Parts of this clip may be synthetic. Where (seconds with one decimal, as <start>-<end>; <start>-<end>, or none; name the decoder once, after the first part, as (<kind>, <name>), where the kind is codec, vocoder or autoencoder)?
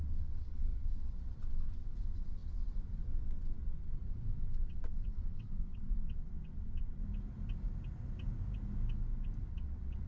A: 0.0-7.0 (vocoder, WaveNeXt); 9.5-10.1